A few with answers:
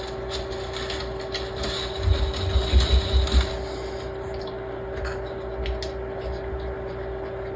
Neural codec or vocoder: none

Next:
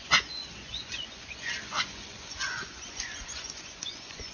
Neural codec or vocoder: vocoder, Vocos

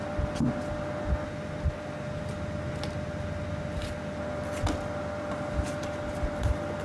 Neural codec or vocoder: none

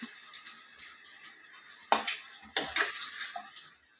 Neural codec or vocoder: none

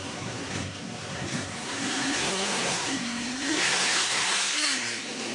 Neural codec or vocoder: codec, SNAC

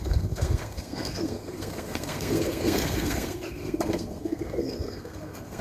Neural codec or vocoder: codec, SNAC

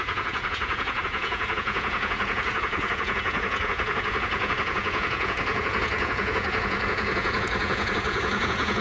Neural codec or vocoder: vocoder, Vocos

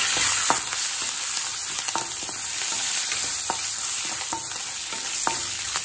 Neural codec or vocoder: none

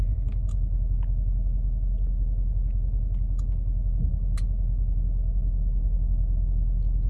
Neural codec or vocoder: none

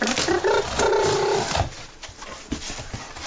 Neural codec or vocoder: none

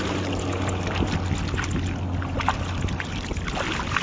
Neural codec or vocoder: none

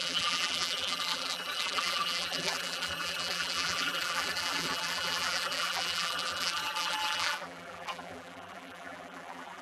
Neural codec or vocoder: vocoder, BigVGAN v2